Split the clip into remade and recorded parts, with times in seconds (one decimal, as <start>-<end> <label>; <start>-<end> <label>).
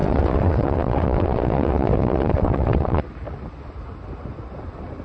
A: 0.0-3.0 remade; 3.0-5.0 recorded